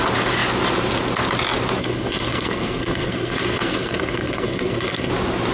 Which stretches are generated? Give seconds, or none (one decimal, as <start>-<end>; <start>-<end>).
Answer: 1.8-5.1